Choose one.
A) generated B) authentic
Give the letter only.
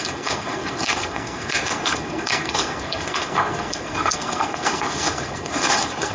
A